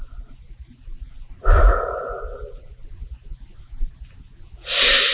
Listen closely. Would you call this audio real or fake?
real